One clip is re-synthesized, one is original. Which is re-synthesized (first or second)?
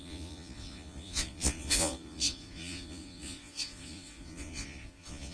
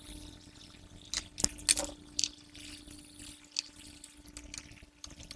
first